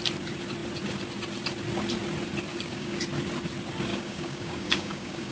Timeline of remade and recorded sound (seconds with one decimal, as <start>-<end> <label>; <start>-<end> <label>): 0.0-2.5 recorded; 2.5-3.0 remade; 3.0-3.9 recorded; 3.9-5.3 remade